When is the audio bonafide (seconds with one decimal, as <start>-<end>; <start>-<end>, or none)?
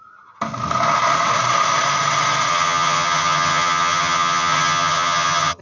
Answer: 0.0-2.5